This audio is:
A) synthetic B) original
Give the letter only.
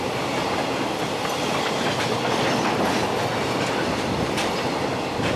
B